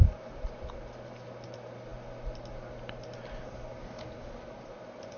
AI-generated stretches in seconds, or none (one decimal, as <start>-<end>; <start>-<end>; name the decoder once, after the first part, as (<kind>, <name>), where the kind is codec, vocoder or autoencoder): none

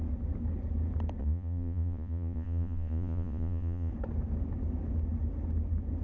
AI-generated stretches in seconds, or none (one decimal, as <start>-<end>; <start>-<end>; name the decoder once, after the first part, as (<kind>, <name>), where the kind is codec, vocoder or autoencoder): 1.2-3.9 (vocoder, Vocos)

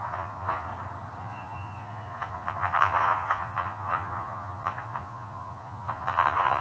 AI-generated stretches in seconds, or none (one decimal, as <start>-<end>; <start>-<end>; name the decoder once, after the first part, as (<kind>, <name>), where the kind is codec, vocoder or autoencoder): 0.0-0.7 (vocoder, Vocos); 1.2-6.6

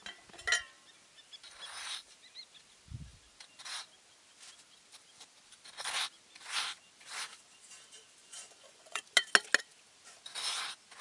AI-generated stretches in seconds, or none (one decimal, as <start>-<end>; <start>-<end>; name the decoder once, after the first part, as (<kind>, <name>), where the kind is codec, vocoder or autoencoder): 8.2-9.0 (vocoder, Vocos)

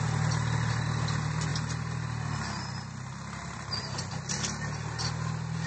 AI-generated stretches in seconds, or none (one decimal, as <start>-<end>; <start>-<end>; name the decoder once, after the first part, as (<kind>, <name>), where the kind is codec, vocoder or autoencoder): none

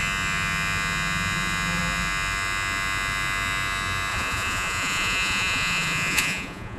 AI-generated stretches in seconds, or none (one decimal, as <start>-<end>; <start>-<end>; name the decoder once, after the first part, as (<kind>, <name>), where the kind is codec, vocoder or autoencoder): 4.1-6.8 (vocoder, Vocos)

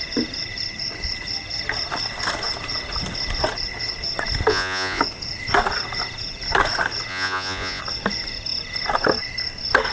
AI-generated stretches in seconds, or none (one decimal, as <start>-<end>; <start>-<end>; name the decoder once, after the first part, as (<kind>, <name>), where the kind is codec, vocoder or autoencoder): 4.5-5.0 (vocoder, Vocos); 7.1-7.8

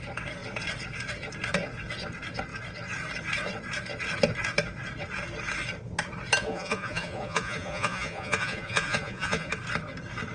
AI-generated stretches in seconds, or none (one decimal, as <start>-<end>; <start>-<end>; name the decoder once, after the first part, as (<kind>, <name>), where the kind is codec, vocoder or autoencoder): 6.4-9.5 (vocoder, Vocos)